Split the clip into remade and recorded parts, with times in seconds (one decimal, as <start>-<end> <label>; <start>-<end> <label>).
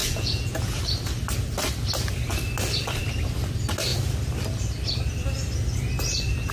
0.0-0.8 remade; 0.8-6.5 recorded